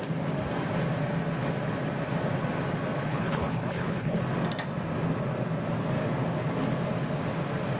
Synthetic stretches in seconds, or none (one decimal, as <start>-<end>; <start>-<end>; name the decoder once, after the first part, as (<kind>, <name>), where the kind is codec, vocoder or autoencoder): 3.1-4.2 (codec, HILCodec)